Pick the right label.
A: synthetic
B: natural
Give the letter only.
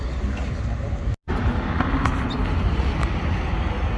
B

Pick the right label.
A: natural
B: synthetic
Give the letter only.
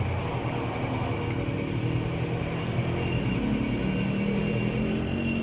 A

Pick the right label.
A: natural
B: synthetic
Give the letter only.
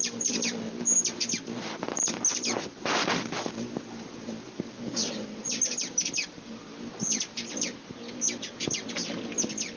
A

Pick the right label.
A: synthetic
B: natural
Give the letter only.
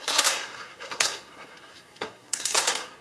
A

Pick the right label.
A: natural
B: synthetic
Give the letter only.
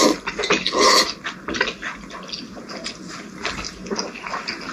A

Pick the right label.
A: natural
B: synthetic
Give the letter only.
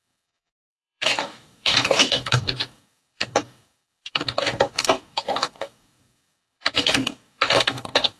B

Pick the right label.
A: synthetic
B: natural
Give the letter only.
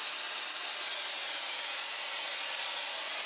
B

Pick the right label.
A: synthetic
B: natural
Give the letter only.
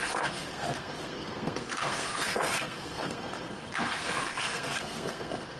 A